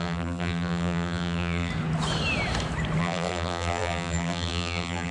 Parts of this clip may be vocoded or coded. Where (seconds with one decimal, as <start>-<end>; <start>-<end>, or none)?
0.0-1.7; 3.0-5.1